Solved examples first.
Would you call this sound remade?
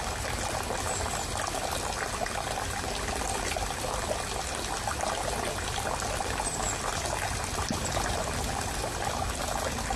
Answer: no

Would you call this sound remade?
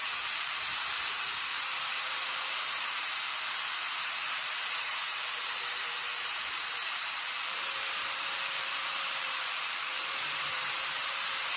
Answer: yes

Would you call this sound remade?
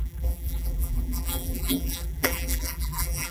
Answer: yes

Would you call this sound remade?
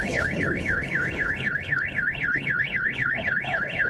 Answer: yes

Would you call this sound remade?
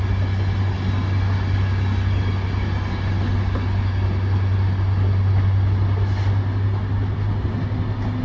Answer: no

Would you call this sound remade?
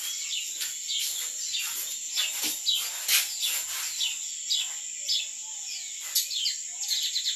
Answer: no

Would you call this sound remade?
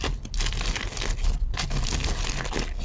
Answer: no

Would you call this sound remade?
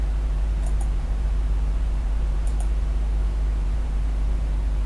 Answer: yes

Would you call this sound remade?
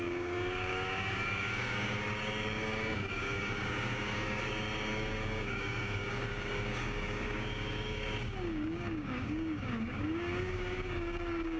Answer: yes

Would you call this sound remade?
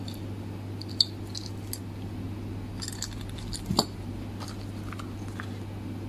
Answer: no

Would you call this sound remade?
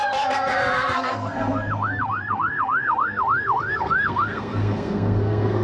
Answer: yes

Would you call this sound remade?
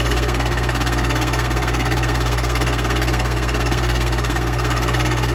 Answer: yes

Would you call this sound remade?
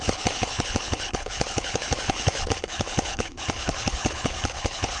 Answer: yes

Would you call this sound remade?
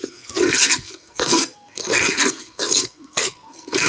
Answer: yes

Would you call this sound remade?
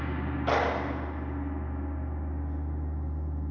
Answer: no